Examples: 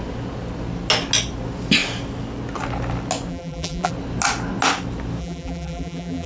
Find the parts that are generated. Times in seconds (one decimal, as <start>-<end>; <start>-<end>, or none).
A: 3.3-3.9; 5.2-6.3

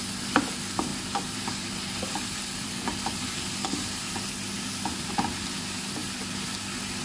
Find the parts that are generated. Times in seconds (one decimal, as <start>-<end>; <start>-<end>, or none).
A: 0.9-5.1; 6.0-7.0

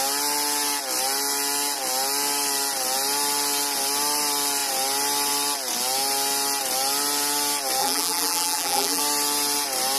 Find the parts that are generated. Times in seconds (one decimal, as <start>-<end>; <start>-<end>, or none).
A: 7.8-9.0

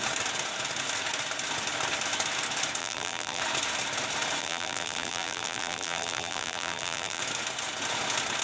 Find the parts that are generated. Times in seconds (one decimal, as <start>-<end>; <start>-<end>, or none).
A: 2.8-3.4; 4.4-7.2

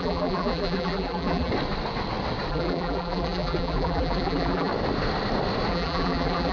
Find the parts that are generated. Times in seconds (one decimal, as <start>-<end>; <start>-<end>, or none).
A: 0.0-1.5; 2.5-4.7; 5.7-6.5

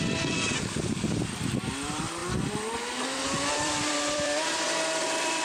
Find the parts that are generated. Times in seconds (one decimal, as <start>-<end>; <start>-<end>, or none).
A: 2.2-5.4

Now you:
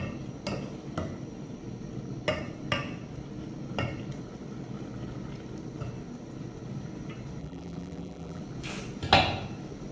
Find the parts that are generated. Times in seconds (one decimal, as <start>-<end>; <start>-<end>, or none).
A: 7.4-8.4